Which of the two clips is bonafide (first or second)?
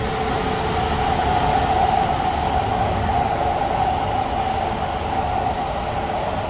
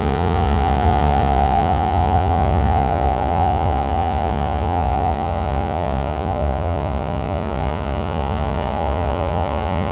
first